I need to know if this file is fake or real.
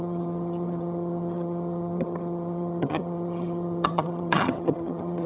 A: fake